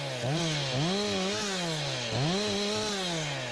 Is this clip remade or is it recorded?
recorded